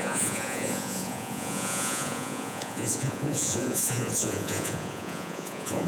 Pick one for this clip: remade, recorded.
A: remade